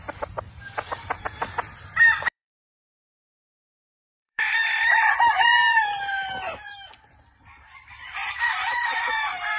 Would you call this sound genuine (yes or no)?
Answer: no